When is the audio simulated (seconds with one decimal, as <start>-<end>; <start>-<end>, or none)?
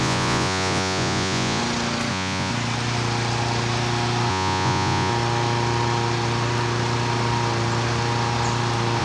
0.0-1.6; 2.1-2.5; 4.3-5.1